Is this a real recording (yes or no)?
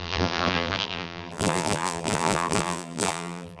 no